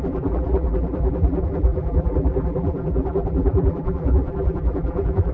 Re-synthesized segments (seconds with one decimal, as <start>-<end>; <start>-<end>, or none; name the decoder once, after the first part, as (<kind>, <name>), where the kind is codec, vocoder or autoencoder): 0.0-5.3 (vocoder, BigVGAN v2)